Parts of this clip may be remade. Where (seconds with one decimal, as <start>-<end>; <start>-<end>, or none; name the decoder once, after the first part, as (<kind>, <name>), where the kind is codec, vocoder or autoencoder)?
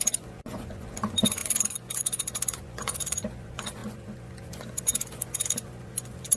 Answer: 0.0-6.4 (vocoder, Vocos)